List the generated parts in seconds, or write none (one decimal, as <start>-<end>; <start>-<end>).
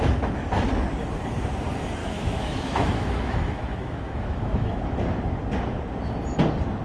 2.0-4.8